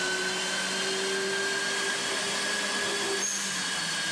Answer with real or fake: real